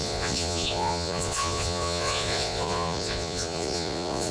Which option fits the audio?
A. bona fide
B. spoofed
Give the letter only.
B